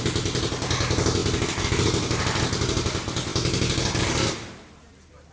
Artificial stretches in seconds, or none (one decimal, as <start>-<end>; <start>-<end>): none